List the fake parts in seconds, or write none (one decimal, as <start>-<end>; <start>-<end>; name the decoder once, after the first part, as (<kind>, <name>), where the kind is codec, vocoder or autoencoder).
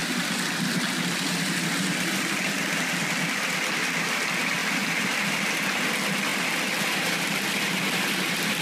none